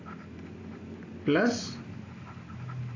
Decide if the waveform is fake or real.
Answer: real